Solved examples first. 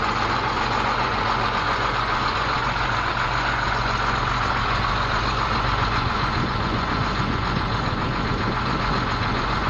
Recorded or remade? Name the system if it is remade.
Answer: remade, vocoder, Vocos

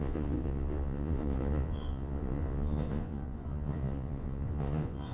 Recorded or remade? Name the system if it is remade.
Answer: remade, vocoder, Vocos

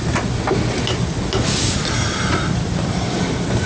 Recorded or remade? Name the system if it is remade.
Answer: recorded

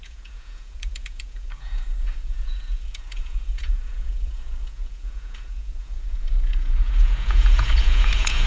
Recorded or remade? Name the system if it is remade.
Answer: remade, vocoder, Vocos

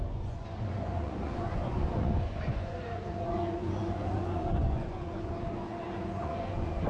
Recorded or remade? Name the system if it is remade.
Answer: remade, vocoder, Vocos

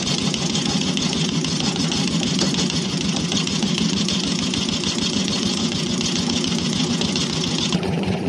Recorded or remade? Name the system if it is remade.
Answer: remade, vocoder, Vocos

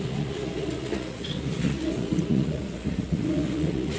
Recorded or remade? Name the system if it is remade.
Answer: remade, vocoder, Vocos